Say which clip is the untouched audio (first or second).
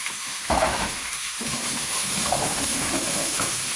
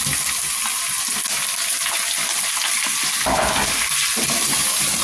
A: second